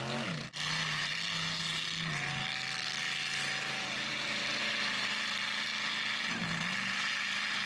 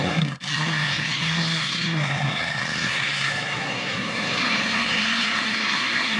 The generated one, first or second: second